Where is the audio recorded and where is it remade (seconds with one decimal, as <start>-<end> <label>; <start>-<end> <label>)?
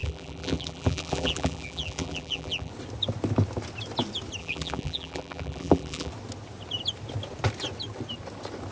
0.0-2.7 remade; 2.7-4.4 recorded; 4.4-6.1 remade; 6.1-8.7 recorded